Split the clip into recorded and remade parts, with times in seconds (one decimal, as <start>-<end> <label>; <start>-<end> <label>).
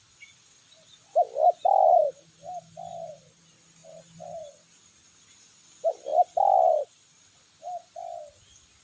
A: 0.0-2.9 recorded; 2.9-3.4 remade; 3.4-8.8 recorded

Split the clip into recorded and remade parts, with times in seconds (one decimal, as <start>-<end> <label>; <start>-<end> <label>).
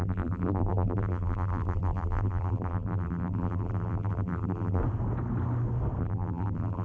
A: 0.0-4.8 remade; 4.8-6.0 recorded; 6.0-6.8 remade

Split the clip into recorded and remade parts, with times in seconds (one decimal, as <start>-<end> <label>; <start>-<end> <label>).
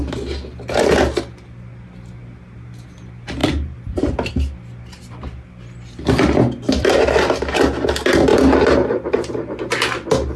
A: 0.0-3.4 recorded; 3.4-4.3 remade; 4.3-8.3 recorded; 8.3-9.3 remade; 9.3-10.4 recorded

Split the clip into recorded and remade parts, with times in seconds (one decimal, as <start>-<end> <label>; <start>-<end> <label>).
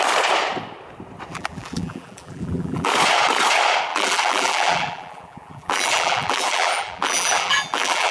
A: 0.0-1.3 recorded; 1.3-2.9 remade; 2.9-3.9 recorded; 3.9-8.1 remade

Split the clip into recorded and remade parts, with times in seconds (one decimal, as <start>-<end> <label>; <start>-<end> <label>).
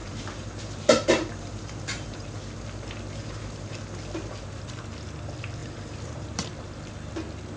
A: 0.0-2.3 remade; 2.3-3.2 recorded; 3.2-3.8 remade; 3.8-5.6 recorded; 5.6-6.4 remade; 6.4-7.6 recorded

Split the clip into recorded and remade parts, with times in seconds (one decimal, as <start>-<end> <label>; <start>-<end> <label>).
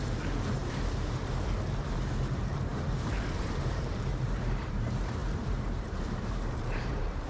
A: 0.0-7.3 remade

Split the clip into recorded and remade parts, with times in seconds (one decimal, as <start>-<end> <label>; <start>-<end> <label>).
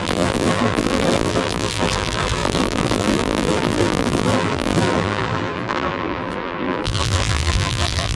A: 0.0-8.2 remade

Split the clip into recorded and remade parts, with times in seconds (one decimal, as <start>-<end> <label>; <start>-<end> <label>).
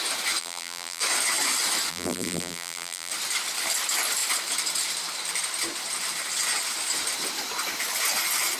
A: 0.0-0.4 recorded; 0.4-1.0 remade; 1.0-1.9 recorded; 1.9-3.1 remade; 3.1-8.6 recorded